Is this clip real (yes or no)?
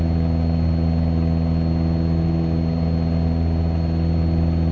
yes